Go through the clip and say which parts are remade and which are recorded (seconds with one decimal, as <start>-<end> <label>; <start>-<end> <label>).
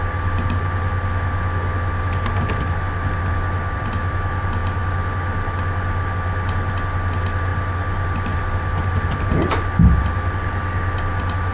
0.0-11.5 recorded